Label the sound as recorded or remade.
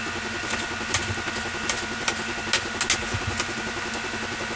recorded